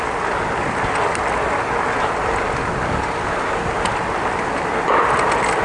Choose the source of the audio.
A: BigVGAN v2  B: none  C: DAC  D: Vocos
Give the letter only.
B